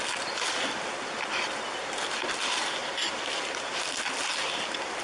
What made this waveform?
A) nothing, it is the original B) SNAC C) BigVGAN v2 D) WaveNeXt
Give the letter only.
A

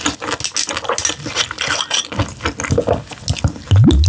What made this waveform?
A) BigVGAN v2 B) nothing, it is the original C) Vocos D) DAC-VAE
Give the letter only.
B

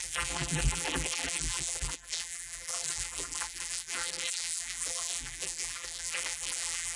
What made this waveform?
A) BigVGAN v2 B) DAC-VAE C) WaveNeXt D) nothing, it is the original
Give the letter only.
A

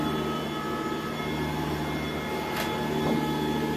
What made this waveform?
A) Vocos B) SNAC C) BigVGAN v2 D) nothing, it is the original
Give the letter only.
D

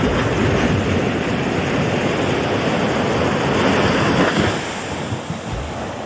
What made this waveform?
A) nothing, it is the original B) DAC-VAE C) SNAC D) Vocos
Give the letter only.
A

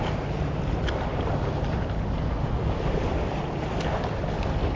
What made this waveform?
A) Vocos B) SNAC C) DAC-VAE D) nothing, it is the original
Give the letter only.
D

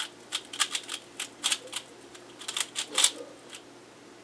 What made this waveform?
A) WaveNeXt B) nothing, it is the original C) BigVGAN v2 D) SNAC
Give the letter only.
B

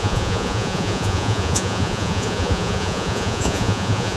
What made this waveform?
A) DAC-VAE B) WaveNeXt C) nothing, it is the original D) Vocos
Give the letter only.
D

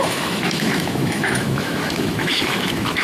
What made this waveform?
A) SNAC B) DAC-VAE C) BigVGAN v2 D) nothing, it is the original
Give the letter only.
B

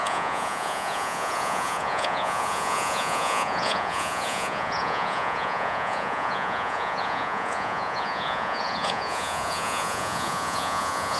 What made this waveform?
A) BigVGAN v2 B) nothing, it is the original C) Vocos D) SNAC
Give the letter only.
C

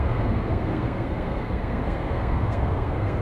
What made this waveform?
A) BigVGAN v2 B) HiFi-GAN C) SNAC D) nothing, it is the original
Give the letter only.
C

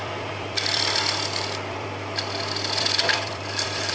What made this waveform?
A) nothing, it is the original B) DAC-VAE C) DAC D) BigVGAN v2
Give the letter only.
D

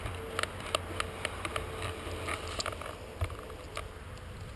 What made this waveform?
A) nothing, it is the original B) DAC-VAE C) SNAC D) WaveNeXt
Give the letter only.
A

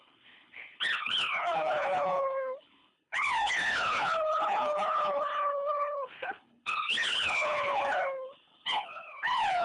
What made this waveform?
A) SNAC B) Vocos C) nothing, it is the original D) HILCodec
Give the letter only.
D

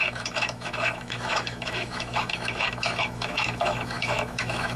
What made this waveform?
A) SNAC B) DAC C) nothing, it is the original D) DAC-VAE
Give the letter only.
D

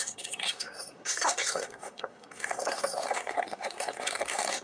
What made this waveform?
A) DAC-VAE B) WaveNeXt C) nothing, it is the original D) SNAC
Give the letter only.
D